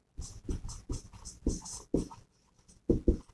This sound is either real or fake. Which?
real